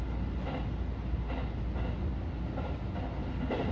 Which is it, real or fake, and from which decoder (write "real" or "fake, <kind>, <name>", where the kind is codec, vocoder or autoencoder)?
real